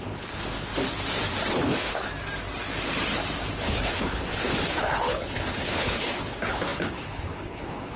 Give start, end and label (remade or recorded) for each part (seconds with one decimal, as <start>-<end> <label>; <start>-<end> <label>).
0.0-0.7 remade; 0.7-1.5 recorded; 1.5-2.1 remade; 2.1-3.6 recorded; 3.6-8.0 remade